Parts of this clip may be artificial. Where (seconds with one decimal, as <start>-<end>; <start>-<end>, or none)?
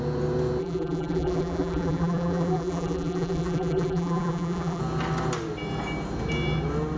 0.6-4.8